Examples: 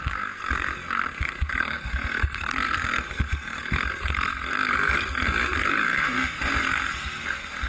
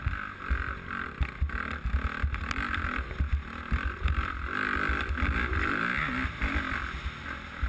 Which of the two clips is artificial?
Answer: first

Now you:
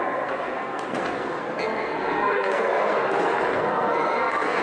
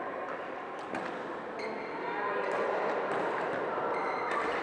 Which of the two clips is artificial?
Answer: first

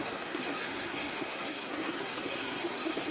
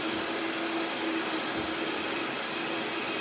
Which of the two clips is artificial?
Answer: first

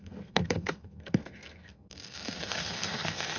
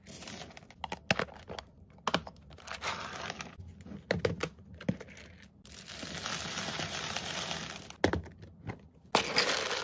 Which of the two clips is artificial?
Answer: first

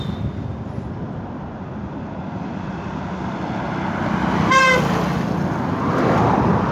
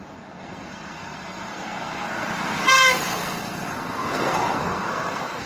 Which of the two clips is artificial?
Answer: second